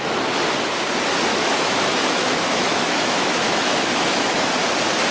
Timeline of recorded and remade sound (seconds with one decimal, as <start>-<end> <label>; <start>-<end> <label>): 0.0-1.3 recorded; 1.3-4.4 remade; 4.4-5.1 recorded